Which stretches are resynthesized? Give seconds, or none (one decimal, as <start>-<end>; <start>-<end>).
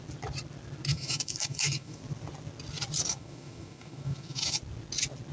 0.9-2.0; 3.1-4.6